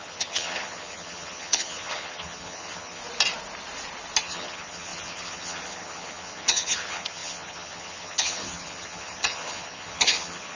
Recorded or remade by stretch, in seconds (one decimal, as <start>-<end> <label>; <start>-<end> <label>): 0.0-3.0 remade; 3.0-4.2 recorded; 4.2-10.6 remade